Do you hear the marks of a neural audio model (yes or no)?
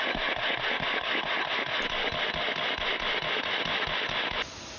no